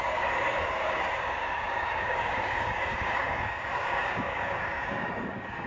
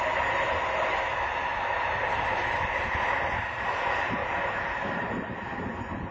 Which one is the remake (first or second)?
first